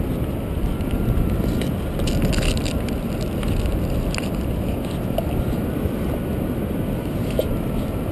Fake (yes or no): no